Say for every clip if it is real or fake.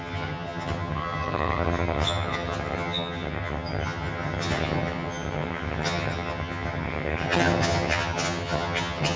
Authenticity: fake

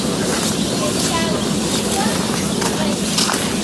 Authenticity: real